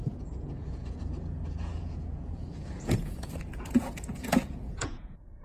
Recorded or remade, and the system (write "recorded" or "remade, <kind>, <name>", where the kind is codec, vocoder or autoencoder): remade, vocoder, Vocos